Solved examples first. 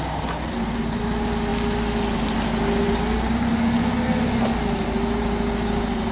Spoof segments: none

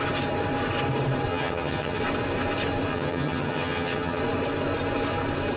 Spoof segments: 1.3-2.0 (vocoder, HiFi-GAN); 2.9-4.2

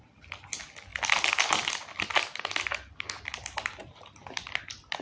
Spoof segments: none

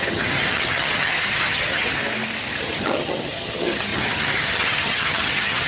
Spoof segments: 0.0-2.0 (vocoder, HiFi-GAN); 2.6-5.7